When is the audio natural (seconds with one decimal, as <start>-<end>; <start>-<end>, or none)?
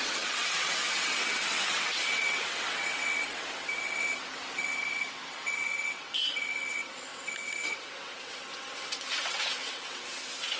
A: none